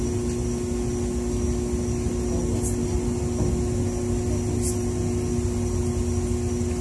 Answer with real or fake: real